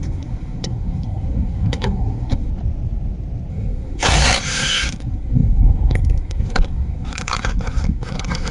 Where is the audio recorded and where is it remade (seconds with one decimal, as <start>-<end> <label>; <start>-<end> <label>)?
0.0-2.5 remade; 2.5-3.5 recorded; 3.5-8.5 remade